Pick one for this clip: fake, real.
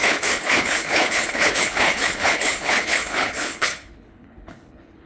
fake